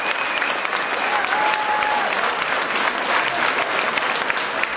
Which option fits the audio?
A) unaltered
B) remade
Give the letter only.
A